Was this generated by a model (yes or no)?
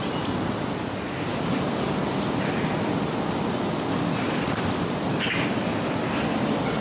no